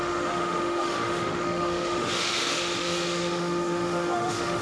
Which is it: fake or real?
fake